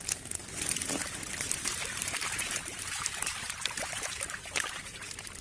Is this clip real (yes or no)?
no